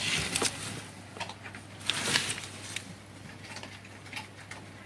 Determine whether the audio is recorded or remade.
recorded